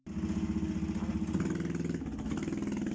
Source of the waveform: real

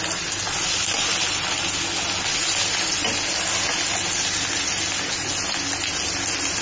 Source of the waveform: real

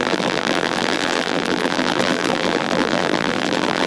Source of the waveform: fake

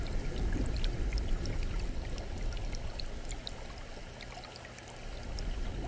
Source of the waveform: real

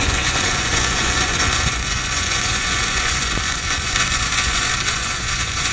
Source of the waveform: fake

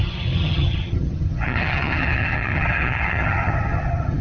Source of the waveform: fake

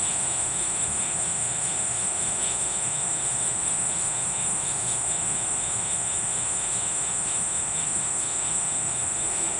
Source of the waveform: fake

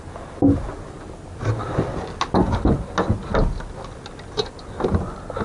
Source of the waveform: real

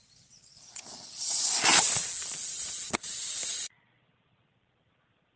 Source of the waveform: fake